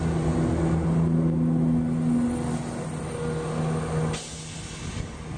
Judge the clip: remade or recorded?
recorded